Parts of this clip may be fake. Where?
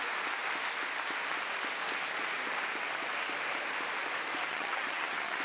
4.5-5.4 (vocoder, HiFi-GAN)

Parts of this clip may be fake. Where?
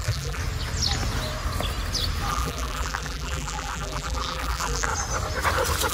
0.0-0.4 (vocoder, BigVGAN v2); 2.3-4.9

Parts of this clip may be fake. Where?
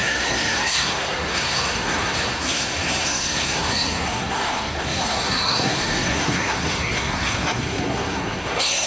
0.0-8.9 (codec, SNAC)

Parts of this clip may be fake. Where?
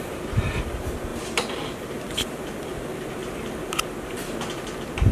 1.1-2.7 (vocoder, BigVGAN v2); 3.2-3.8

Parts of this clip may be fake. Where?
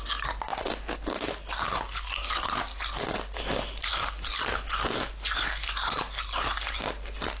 none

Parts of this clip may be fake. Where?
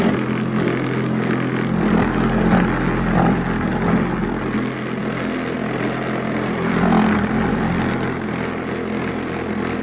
none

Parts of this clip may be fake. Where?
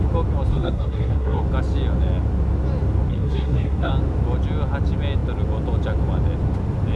0.5-1.4 (codec, SNAC); 3.1-3.9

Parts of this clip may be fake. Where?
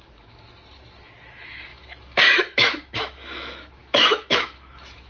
0.0-5.1 (autoencoder, DAC-VAE)